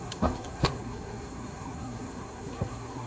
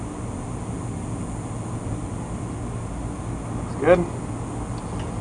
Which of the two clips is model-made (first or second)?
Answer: first